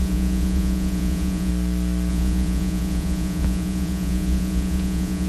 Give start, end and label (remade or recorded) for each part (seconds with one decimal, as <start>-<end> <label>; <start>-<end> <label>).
0.0-1.5 remade; 1.5-2.1 recorded; 2.1-5.3 remade